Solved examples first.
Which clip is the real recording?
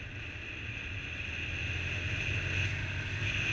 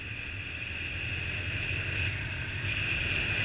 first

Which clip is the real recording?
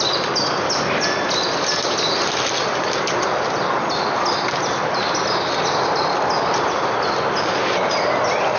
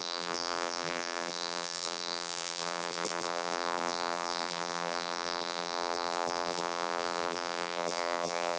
first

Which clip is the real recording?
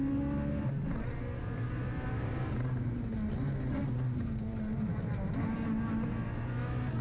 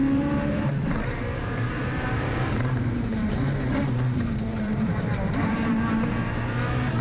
first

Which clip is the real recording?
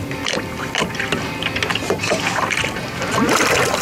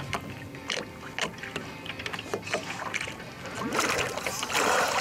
second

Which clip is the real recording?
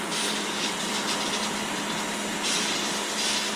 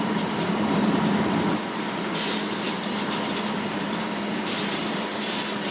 first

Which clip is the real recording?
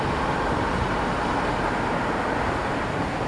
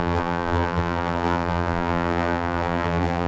first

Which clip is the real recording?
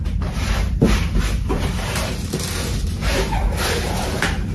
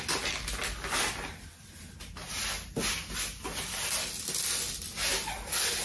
second